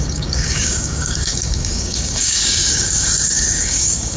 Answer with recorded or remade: remade